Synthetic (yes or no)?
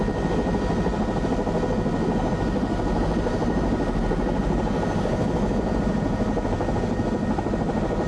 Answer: no